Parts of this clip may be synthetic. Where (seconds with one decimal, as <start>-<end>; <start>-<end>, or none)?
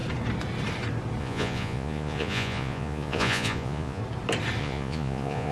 1.2-4.0; 4.6-5.5